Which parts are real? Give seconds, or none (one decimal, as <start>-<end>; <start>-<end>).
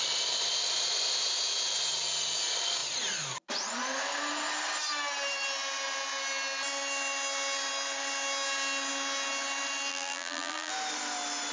0.0-9.9; 10.7-11.5